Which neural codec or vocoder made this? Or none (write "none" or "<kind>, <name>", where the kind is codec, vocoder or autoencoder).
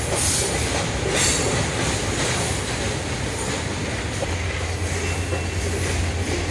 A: none